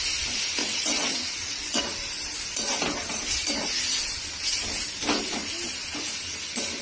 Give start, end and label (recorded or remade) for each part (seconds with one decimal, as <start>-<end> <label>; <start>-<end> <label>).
0.0-0.6 recorded; 0.6-1.8 remade; 1.8-6.8 recorded